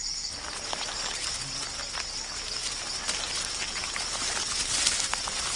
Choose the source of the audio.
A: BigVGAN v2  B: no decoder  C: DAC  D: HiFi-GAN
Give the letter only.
B